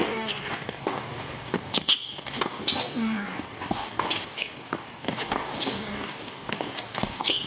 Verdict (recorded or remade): remade